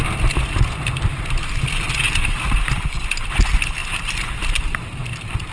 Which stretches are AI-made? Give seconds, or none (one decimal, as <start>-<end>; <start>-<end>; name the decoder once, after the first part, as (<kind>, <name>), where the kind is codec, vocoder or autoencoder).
3.8-4.6 (vocoder, BigVGAN v2)